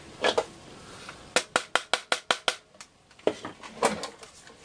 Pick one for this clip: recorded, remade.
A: recorded